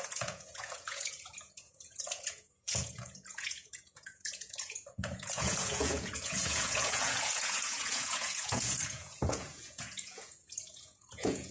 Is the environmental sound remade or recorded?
remade